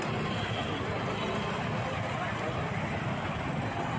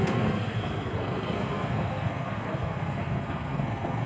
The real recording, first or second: first